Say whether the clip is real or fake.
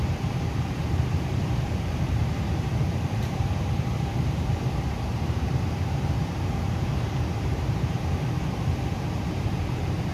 fake